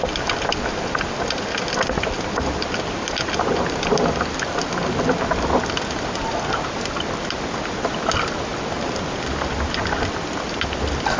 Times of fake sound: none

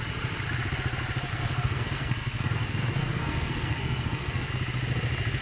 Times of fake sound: 1.3-4.5 (codec, SNAC)

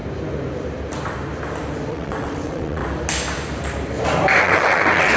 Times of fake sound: 1.9-2.8 (vocoder, WaveNeXt); 4.4-5.2

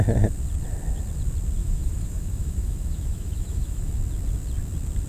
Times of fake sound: 1.6-3.9 (autoencoder, DAC-VAE)

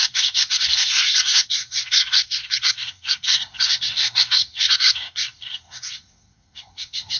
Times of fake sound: 0.0-7.2 (codec, SNAC)